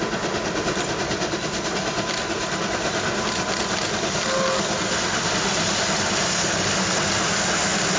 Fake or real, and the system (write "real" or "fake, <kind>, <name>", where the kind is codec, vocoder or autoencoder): real